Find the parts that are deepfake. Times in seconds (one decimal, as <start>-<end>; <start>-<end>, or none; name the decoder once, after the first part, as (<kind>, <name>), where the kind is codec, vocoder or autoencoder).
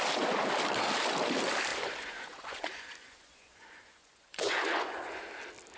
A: 1.7-5.2 (vocoder, Vocos)